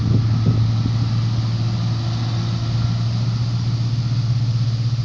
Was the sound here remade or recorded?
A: recorded